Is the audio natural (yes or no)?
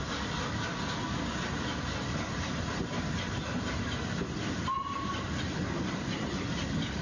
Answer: yes